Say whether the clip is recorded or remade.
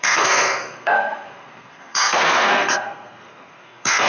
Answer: remade